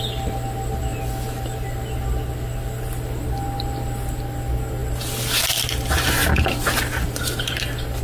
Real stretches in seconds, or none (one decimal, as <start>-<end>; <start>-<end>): 0.0-8.0